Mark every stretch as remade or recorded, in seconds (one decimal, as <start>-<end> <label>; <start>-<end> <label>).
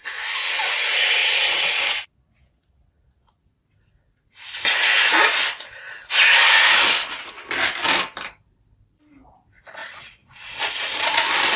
0.0-1.2 recorded; 1.2-3.6 remade; 3.6-9.8 recorded; 9.8-11.1 remade; 11.1-11.6 recorded